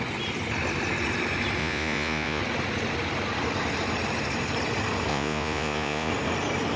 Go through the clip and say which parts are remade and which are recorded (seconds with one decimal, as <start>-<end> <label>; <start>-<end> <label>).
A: 0.0-1.6 recorded; 1.6-2.4 remade; 2.4-5.1 recorded; 5.1-6.1 remade; 6.1-6.8 recorded